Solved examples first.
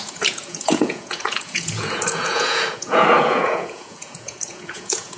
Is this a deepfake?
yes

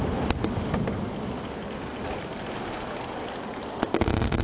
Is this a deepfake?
no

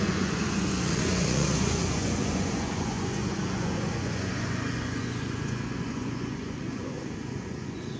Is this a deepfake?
yes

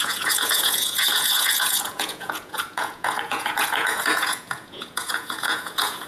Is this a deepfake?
yes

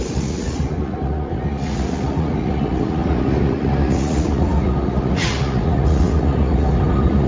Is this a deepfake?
yes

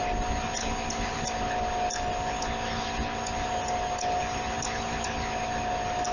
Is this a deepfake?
no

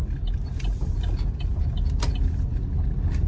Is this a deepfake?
no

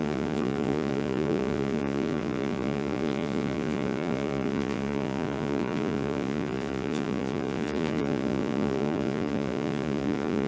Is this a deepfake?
yes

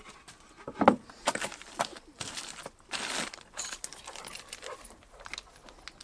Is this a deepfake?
no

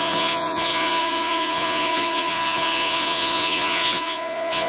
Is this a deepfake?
yes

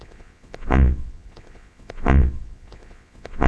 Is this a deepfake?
yes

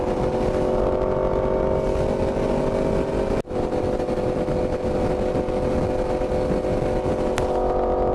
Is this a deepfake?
no